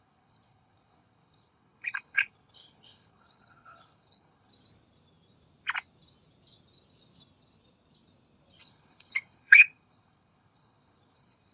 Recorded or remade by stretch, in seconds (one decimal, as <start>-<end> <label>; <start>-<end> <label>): 0.0-4.5 remade; 4.5-8.6 recorded; 8.6-11.5 remade

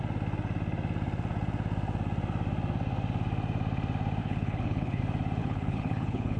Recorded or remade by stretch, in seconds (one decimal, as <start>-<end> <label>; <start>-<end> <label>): 0.0-4.2 recorded; 4.2-5.0 remade; 5.0-5.4 recorded; 5.4-6.4 remade

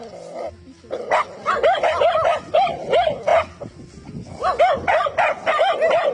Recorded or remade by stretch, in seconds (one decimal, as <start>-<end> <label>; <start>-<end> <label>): 0.0-6.1 recorded

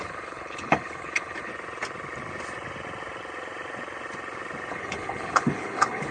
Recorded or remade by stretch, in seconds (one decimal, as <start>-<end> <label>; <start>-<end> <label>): 0.0-1.5 remade; 1.5-4.7 recorded; 4.7-6.1 remade

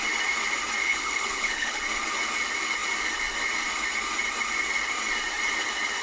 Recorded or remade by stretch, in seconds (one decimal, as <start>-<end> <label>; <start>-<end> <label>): 0.0-0.8 recorded; 0.8-1.8 remade; 1.8-6.0 recorded

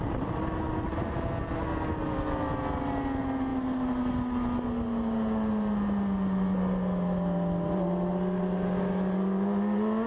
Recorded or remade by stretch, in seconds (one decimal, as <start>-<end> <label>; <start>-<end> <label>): 0.0-10.1 recorded

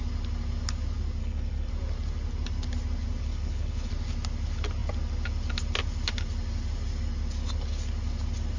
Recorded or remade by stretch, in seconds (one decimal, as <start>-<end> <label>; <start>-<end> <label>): 0.0-1.2 recorded; 1.2-1.7 remade; 1.7-3.2 recorded; 3.2-3.9 remade; 3.9-8.6 recorded

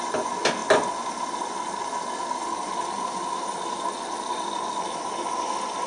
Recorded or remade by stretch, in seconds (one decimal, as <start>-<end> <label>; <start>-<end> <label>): 0.0-5.9 recorded